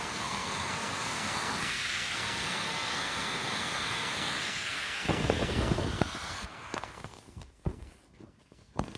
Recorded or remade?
remade